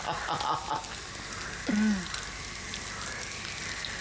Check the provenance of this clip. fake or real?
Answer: real